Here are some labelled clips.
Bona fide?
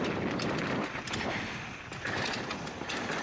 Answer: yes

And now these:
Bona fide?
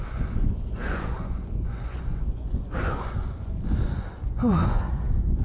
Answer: no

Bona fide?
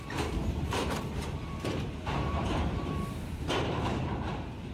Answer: no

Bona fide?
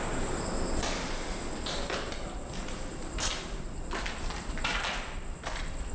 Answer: yes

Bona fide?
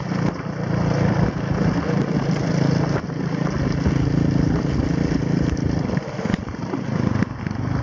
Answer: yes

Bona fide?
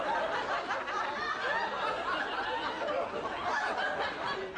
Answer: yes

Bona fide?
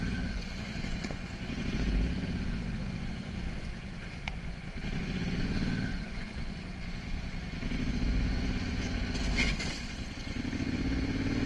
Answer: no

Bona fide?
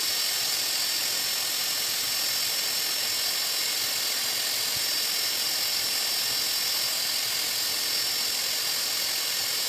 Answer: yes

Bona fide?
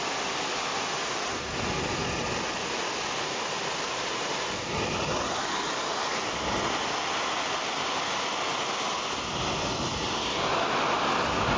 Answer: yes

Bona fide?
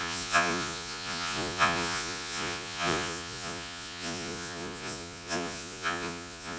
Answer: no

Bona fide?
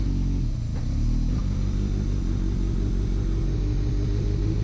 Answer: yes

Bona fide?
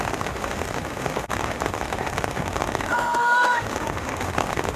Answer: no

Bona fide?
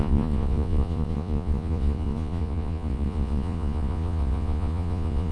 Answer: no